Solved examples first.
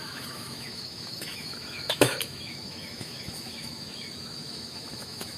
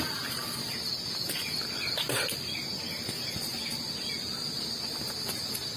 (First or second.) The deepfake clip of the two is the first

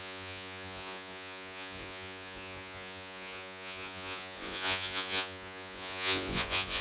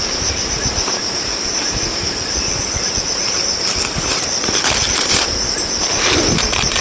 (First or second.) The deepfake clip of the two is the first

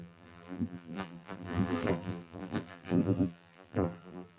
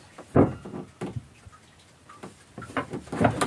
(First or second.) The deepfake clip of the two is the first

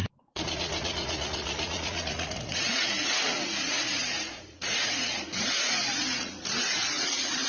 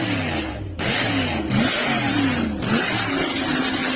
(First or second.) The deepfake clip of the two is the first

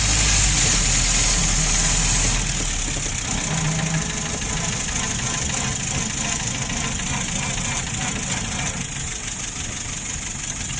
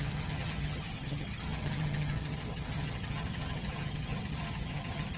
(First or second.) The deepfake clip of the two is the second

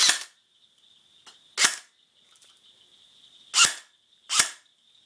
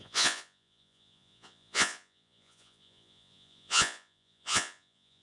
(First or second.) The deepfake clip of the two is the second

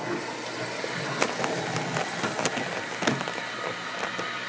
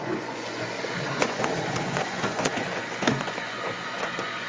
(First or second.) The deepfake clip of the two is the second